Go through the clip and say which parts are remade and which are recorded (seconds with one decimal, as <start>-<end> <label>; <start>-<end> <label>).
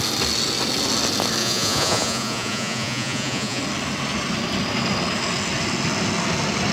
0.0-1.4 recorded; 1.4-3.6 remade; 3.6-6.7 recorded